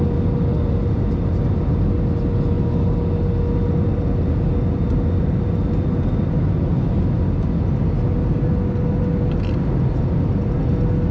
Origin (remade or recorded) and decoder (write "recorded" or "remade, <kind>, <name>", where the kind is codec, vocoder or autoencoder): recorded